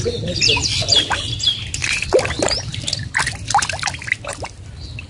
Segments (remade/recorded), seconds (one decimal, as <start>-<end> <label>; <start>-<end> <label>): 0.0-5.1 recorded